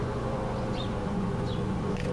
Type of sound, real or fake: fake